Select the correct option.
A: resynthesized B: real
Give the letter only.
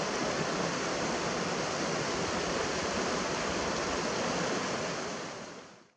B